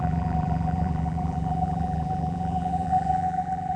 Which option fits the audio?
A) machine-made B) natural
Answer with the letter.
A